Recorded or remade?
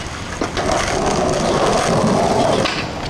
recorded